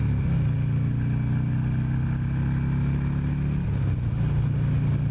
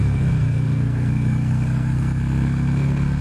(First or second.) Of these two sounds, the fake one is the second